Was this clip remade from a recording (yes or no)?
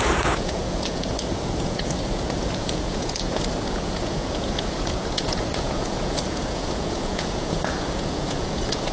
yes